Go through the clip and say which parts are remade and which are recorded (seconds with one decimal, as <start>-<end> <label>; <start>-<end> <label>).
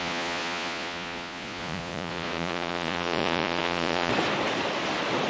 0.0-4.1 remade; 4.1-5.3 recorded